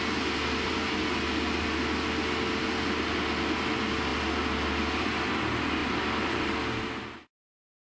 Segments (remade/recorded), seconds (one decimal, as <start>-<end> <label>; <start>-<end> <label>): 0.0-8.0 recorded